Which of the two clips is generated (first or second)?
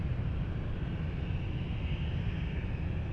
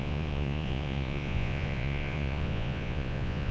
second